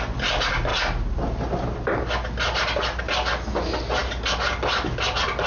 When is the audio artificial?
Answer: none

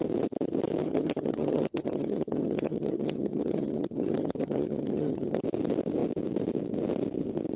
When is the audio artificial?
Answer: 0.8-5.4 (vocoder, HiFi-GAN)

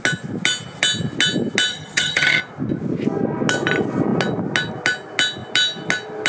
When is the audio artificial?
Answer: 1.7-2.4 (vocoder, HiFi-GAN)

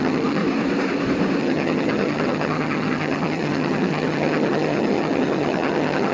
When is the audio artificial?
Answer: 0.0-0.4 (vocoder, HiFi-GAN); 1.4-6.1

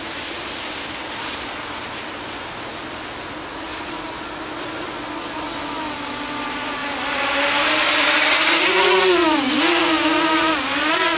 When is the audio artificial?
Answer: none

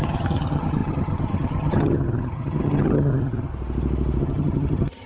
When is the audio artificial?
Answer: 0.0-3.5 (vocoder, HiFi-GAN); 4.2-5.1

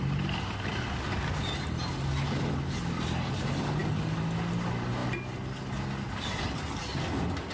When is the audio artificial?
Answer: none